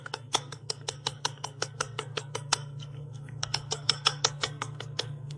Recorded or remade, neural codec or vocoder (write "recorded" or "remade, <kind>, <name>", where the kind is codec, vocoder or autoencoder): remade, codec, SNAC